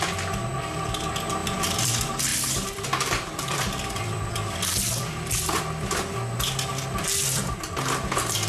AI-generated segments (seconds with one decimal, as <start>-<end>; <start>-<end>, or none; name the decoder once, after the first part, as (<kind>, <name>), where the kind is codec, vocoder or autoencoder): 1.4-1.9 (vocoder, BigVGAN v2); 2.3-5.6